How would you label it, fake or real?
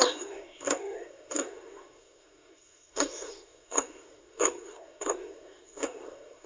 fake